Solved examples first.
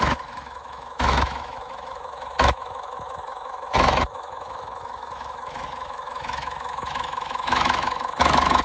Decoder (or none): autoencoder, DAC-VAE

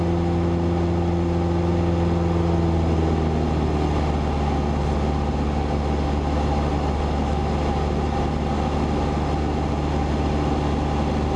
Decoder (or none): none